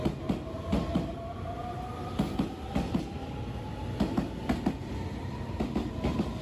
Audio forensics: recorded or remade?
recorded